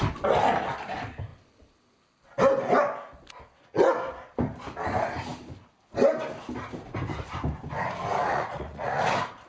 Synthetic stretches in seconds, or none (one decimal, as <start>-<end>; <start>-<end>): 8.2-9.0